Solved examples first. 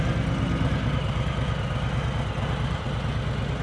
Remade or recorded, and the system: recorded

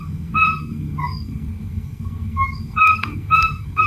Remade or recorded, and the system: remade, codec, SNAC